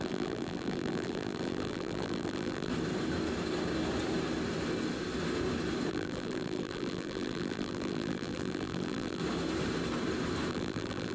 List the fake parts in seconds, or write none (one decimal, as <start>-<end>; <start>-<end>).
0.0-2.7; 5.9-9.2; 10.5-11.1